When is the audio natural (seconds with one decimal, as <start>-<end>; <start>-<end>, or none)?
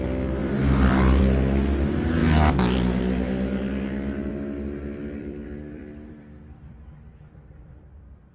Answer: 0.0-0.4; 1.2-2.2; 3.0-4.3